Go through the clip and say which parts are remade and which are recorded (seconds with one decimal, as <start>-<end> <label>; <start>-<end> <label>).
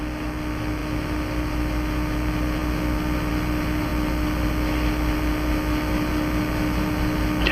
0.0-7.5 recorded